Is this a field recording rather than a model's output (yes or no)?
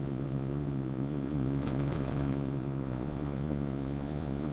no